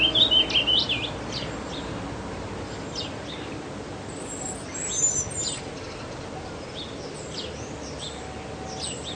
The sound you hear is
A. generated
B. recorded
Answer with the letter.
B